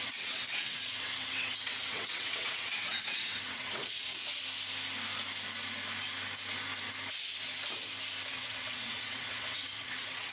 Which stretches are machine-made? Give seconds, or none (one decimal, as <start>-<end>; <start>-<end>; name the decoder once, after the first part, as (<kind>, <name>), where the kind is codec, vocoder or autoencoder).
0.0-4.2 (vocoder, WaveNeXt); 8.3-10.3